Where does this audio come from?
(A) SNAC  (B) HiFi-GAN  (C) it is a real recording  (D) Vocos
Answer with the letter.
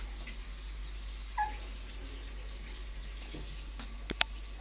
C